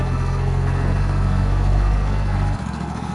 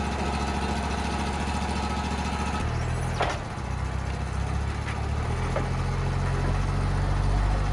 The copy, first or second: first